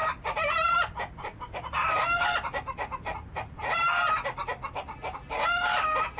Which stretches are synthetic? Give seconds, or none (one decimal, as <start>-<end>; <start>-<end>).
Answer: 0.0-3.7